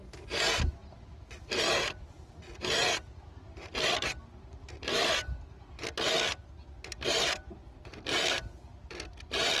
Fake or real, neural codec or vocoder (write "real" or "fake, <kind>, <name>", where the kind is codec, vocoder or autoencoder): real